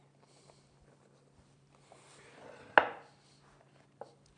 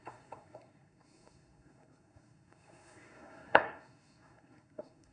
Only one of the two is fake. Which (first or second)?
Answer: second